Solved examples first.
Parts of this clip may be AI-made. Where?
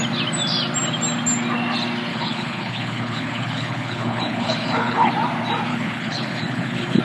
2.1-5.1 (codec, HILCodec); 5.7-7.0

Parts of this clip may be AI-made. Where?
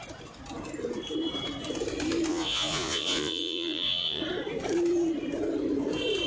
2.3-4.2 (vocoder, Vocos)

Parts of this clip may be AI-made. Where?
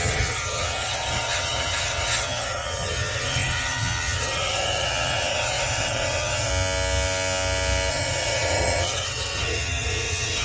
0.0-6.5 (vocoder, HiFi-GAN); 7.9-10.4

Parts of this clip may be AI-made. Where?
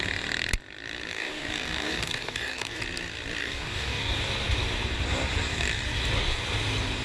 1.1-2.8 (codec, DAC); 3.4-4.2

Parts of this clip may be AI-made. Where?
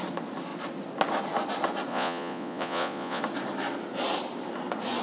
1.9-3.2 (vocoder, Vocos)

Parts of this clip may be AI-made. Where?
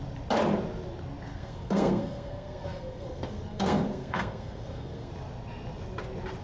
1.3-5.1 (codec, SNAC)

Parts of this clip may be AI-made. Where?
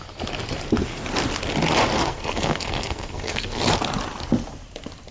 2.0-3.6 (codec, SNAC)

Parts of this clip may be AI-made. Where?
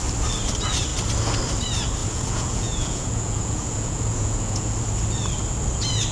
2.0-4.7 (vocoder, Vocos)